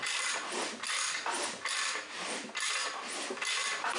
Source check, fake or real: real